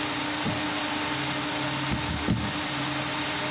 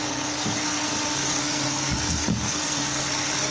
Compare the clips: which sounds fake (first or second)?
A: second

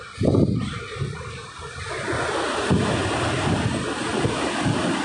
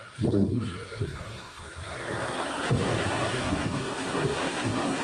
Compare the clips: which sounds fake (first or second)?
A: second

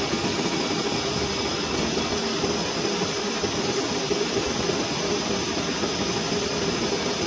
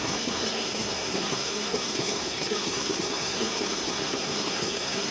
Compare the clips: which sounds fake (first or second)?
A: second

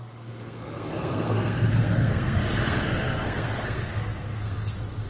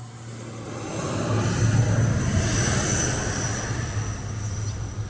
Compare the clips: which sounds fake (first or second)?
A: first